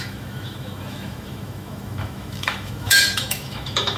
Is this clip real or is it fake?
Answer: fake